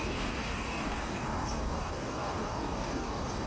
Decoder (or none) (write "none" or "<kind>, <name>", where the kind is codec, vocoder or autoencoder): codec, DAC